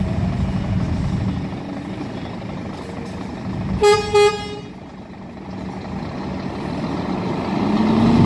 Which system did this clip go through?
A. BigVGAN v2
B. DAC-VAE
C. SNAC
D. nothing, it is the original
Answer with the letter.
D